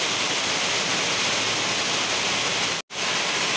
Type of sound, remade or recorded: recorded